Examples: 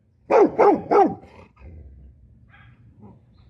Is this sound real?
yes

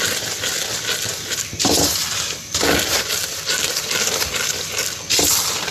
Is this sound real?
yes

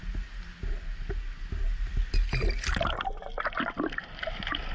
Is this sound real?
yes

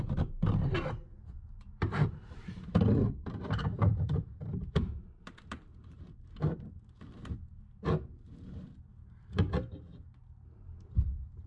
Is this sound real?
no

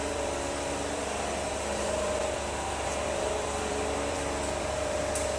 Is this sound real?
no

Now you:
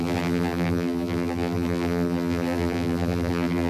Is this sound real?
no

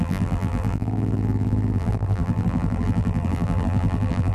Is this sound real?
no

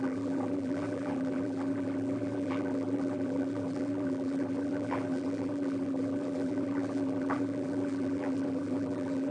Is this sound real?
no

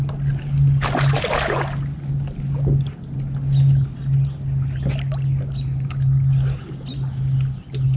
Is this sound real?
yes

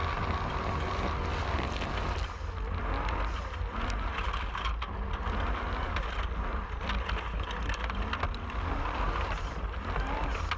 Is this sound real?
yes